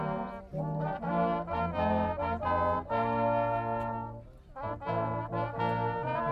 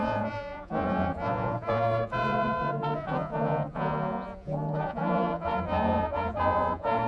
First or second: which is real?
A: first